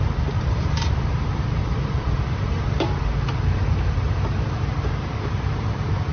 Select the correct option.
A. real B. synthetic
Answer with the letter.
B